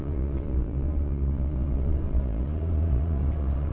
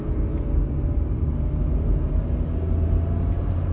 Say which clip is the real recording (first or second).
second